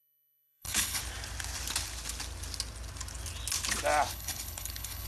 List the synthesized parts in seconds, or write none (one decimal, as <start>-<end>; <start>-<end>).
0.0-1.0; 4.1-5.1